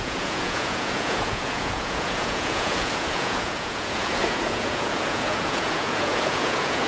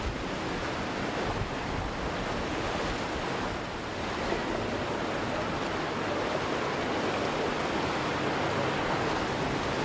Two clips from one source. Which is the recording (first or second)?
second